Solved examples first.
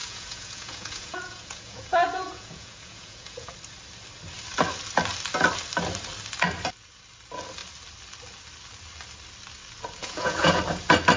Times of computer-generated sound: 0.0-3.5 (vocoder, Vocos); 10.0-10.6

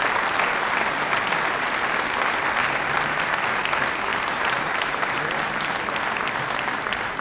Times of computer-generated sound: 4.1-5.2 (vocoder, BigVGAN v2)